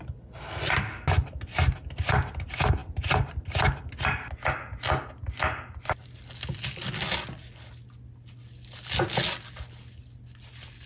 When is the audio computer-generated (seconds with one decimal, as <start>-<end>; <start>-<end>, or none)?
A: none